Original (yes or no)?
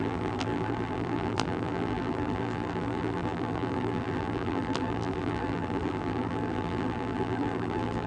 no